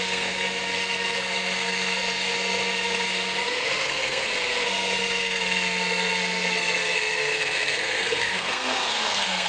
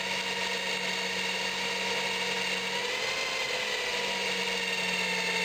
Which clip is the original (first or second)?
second